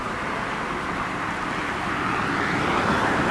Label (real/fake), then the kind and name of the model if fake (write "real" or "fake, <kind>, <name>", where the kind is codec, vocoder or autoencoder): real